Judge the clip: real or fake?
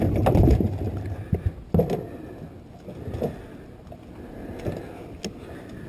real